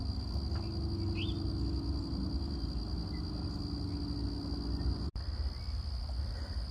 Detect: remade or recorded recorded